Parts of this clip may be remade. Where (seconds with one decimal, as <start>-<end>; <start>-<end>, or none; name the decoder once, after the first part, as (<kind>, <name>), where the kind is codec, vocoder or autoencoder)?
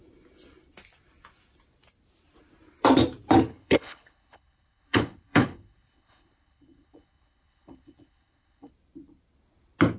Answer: 3.5-8.7 (codec, HILCodec)